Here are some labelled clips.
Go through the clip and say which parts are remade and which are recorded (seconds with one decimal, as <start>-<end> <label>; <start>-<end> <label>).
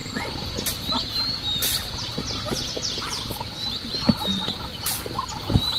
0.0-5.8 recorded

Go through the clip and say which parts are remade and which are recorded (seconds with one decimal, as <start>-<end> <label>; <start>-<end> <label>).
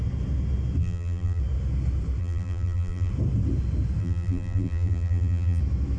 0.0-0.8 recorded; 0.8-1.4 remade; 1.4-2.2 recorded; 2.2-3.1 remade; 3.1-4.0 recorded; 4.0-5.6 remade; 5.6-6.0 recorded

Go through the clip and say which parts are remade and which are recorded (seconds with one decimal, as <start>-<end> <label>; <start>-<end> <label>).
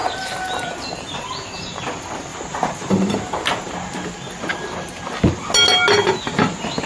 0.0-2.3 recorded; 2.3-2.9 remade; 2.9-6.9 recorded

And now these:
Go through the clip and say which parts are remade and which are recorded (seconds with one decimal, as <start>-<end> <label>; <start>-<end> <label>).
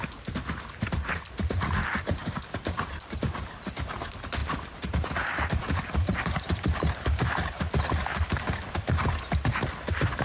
0.0-2.2 recorded; 2.2-3.6 remade; 3.6-4.4 recorded; 4.4-7.6 remade; 7.6-10.2 recorded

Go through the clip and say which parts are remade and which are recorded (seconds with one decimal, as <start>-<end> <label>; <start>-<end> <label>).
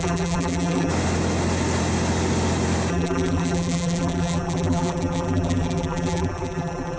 0.0-0.9 remade; 0.9-2.9 recorded; 2.9-7.0 remade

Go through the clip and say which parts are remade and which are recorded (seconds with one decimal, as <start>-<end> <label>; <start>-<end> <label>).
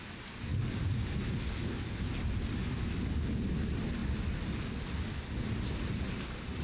0.0-0.5 recorded; 0.5-3.5 remade; 3.5-6.6 recorded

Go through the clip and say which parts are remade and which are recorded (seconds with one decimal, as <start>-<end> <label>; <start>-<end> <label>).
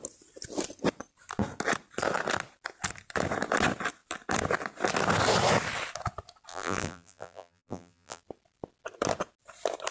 0.0-6.5 recorded; 6.5-8.2 remade; 8.2-9.9 recorded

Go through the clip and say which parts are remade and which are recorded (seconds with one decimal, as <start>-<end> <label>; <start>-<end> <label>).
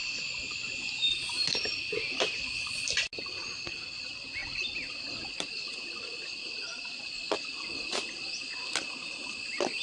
0.0-9.8 recorded